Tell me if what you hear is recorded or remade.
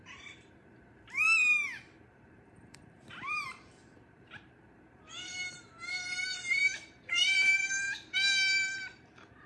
remade